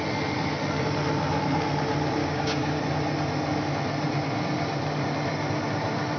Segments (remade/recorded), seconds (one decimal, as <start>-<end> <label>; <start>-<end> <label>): 0.0-2.2 recorded; 2.2-2.8 remade; 2.8-6.2 recorded